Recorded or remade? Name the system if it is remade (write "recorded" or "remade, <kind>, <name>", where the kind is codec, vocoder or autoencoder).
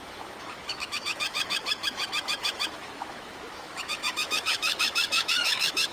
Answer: remade, autoencoder, DAC-VAE